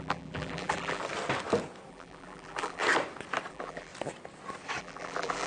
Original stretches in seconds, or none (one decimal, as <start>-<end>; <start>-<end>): 1.0-1.9; 2.8-3.5; 3.9-4.8